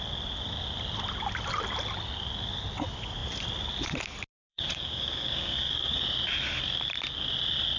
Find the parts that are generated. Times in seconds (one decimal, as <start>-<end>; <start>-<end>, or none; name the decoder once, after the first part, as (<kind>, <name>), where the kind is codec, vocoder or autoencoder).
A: 4.5-6.0 (codec, DAC)